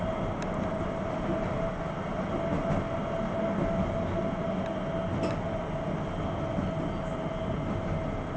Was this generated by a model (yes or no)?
no